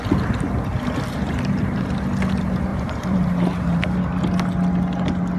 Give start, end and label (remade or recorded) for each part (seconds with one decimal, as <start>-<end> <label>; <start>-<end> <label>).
0.0-2.7 recorded; 2.7-4.0 remade; 4.0-5.4 recorded